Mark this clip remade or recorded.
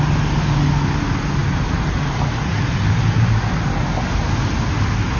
recorded